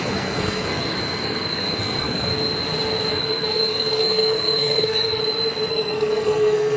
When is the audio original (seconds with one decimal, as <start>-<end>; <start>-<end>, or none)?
2.3-3.1; 5.2-5.7